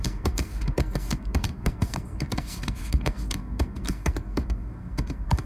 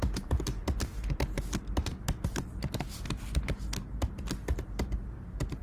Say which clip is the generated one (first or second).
first